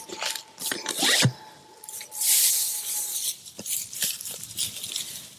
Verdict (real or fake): fake